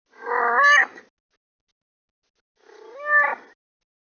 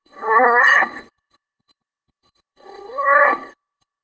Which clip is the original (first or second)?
first